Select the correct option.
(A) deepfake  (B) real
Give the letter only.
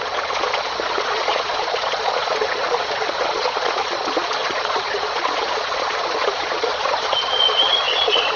A